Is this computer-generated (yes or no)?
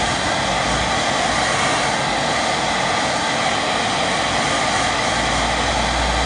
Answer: no